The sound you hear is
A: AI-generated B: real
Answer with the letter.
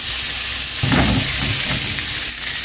B